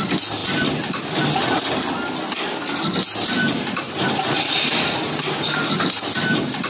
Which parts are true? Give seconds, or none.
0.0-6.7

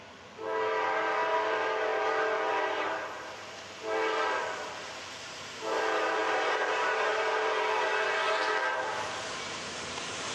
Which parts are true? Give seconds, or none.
none